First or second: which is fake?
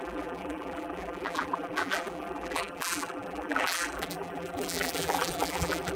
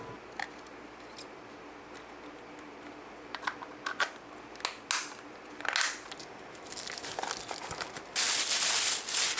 first